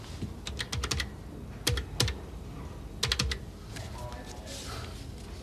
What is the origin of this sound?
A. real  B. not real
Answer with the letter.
A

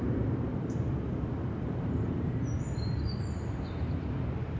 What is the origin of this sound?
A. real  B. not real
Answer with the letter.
B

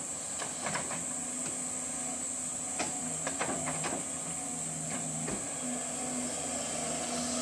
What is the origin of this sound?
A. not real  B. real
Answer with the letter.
B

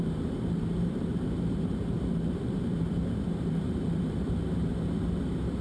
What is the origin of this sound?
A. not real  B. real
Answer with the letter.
A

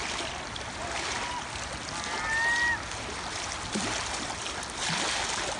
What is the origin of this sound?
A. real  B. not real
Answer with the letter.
A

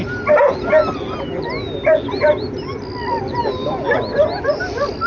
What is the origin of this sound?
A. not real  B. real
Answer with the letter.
B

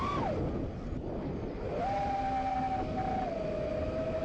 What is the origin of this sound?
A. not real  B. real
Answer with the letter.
B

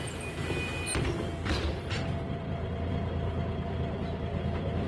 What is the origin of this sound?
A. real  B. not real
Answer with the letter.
B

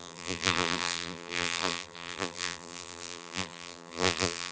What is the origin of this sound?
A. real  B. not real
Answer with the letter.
B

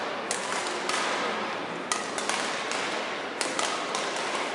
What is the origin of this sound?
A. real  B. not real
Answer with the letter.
A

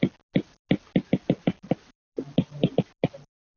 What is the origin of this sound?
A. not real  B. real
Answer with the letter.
B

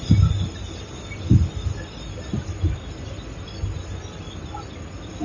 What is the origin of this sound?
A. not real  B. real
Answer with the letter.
B